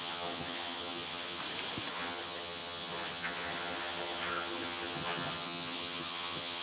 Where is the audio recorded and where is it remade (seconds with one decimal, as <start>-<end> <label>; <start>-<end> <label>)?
0.0-1.4 remade; 1.4-1.9 recorded; 1.9-6.6 remade